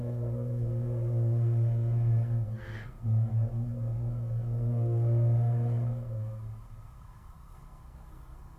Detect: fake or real fake